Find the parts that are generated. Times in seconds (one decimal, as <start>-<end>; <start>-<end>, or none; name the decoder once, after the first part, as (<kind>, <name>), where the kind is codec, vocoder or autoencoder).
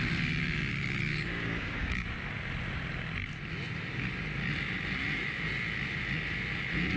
0.7-2.1 (codec, DAC)